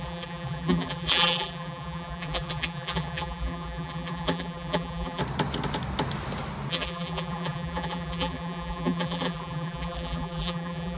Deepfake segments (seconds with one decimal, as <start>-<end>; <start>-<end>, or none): 0.0-5.2; 6.7-11.0